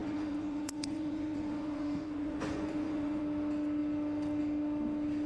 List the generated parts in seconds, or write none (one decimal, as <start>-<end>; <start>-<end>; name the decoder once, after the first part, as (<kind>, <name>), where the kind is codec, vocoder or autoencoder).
0.0-3.2 (vocoder, Vocos)